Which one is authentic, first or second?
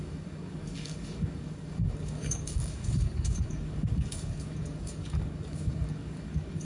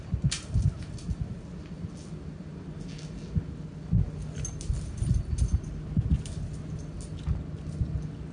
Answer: second